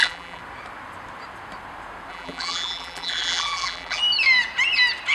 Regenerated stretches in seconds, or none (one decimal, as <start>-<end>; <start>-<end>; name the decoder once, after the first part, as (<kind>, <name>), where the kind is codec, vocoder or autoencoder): 0.0-0.4 (vocoder, BigVGAN v2); 2.1-4.0